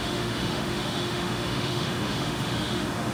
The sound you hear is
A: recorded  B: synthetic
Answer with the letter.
B